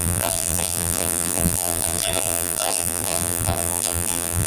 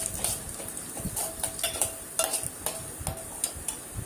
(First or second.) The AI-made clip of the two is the first